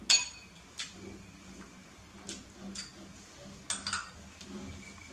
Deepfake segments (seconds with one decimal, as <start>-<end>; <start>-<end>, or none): none